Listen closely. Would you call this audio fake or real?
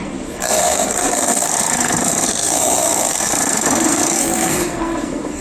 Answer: fake